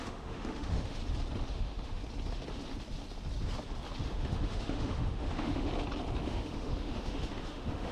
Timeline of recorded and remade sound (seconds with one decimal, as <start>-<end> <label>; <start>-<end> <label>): 0.0-1.0 remade; 1.0-1.5 recorded; 1.5-2.0 remade; 2.0-4.0 recorded; 4.0-5.7 remade; 5.7-6.2 recorded; 6.2-7.9 remade